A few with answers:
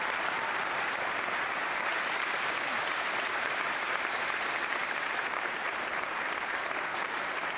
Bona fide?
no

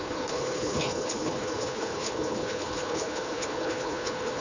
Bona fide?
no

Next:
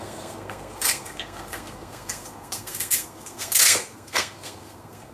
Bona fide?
no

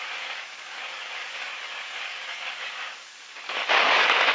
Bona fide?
no